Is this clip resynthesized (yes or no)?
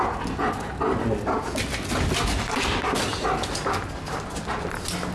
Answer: no